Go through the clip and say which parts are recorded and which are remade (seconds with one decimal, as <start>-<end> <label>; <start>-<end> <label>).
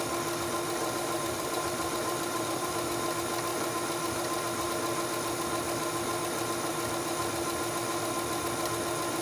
0.0-0.8 recorded; 0.8-2.9 remade; 2.9-3.5 recorded; 3.5-4.7 remade; 4.7-9.2 recorded